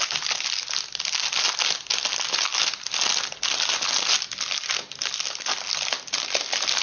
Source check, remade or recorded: recorded